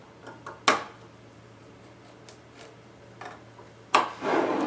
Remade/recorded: recorded